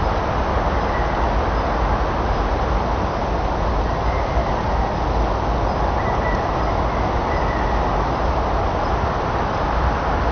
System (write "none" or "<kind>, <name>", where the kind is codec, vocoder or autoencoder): none